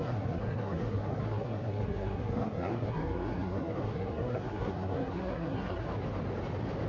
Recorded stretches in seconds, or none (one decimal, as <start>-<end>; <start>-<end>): 5.9-6.9